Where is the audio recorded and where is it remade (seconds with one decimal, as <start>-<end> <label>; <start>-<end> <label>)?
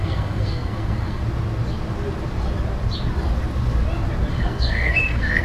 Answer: 0.0-1.2 remade; 1.2-4.3 recorded; 4.3-5.4 remade